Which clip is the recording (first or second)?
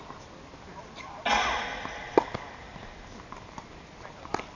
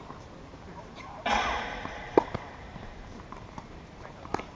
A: first